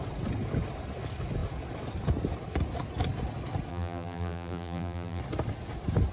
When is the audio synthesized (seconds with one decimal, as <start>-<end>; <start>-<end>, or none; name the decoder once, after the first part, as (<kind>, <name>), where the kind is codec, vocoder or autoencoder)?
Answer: 3.7-5.2 (vocoder, BigVGAN v2)